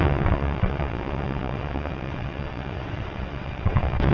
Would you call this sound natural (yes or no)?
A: no